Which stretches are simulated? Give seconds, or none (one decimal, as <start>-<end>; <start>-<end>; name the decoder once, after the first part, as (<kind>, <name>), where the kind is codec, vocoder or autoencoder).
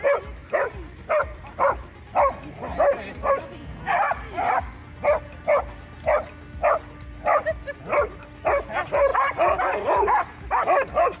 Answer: 0.4-4.6 (vocoder, BigVGAN v2)